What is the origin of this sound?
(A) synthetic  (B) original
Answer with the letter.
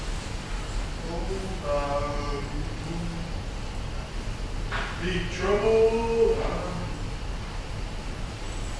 B